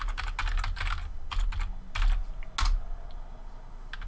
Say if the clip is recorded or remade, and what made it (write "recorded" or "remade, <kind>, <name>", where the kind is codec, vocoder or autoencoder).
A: recorded